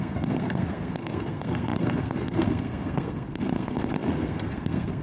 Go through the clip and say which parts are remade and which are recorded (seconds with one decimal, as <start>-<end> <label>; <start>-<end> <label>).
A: 0.0-5.0 remade